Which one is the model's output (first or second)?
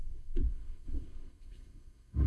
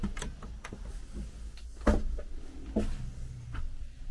first